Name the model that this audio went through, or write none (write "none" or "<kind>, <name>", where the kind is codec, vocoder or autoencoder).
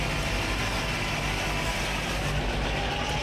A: none